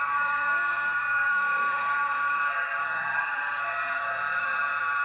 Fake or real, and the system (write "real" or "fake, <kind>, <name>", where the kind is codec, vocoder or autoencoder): fake, codec, SNAC